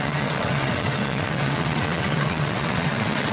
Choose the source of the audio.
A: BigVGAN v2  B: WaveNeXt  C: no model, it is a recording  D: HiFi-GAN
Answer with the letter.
B